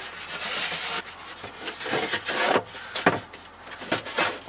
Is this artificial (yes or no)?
no